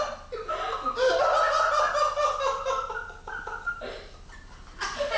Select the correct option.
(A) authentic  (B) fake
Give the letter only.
A